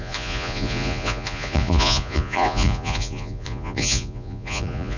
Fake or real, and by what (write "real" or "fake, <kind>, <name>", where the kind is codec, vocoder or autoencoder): fake, vocoder, Vocos